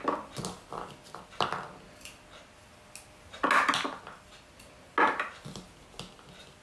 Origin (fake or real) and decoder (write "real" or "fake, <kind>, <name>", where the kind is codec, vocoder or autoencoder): real